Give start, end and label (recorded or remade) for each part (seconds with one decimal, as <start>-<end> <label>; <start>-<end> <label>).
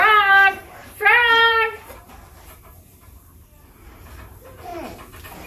0.0-4.7 remade; 4.7-5.5 recorded